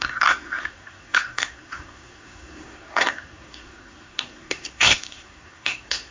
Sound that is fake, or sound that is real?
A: fake